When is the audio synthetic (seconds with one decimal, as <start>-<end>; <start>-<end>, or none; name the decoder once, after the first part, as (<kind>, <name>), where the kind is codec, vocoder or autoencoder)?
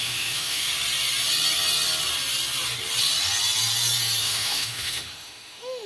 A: 0.0-0.7 (autoencoder, DAC-VAE); 4.2-5.9